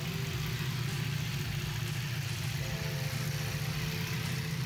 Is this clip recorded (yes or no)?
yes